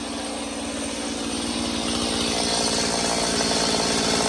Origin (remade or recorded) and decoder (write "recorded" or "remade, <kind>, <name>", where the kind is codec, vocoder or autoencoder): recorded